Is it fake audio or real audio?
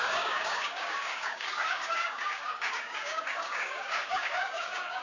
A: fake